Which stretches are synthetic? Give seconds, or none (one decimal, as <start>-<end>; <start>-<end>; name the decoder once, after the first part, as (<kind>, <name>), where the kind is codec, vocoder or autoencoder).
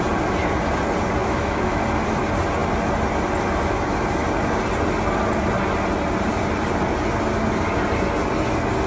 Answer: 1.2-1.8 (autoencoder, DAC-VAE)